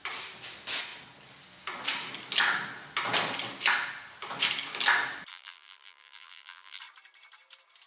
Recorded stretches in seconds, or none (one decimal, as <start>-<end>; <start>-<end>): 0.0-5.3; 6.8-7.9